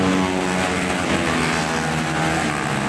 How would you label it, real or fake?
real